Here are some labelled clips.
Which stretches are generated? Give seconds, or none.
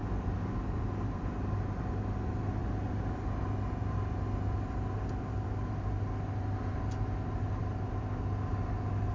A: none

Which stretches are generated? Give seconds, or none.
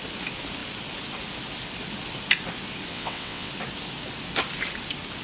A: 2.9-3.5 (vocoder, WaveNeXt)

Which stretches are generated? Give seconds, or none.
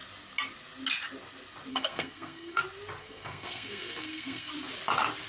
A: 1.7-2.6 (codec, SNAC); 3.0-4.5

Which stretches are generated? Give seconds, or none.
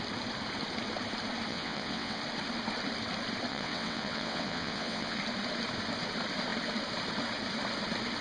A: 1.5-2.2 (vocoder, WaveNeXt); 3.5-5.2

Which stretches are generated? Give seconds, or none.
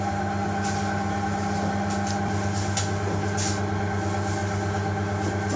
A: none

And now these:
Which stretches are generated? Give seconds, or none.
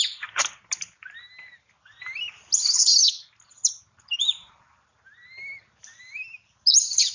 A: none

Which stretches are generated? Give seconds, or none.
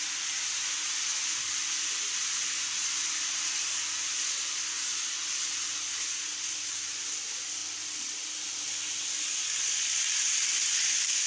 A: none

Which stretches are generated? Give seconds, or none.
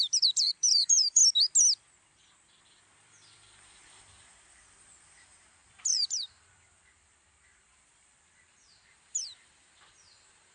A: 0.0-1.2 (vocoder, BigVGAN v2); 2.6-10.5